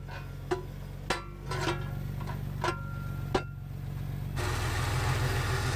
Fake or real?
real